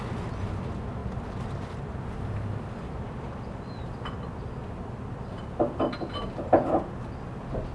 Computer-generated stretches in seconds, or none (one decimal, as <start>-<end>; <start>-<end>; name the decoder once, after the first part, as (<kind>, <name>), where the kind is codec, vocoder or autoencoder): 1.0-4.1 (vocoder, BigVGAN v2); 4.6-5.3